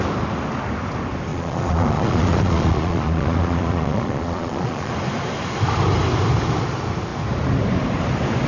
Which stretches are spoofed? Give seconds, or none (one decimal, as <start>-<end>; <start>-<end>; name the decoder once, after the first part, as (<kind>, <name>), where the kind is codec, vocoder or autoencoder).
1.3-4.9 (vocoder, Vocos)